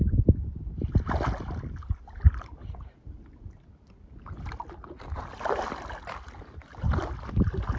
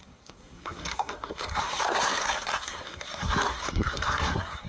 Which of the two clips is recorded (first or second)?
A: first